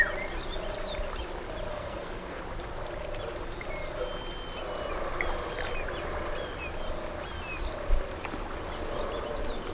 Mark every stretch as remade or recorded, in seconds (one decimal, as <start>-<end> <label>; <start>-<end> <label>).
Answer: 0.0-1.7 recorded; 1.7-2.4 remade; 2.4-9.7 recorded